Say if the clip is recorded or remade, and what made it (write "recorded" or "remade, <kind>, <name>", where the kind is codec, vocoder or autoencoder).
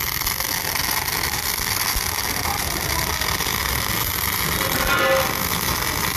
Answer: recorded